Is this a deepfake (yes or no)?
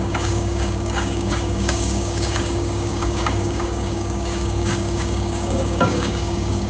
yes